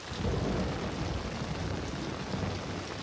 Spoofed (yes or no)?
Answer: no